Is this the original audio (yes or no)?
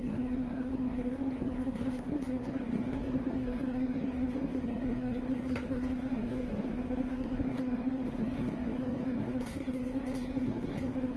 no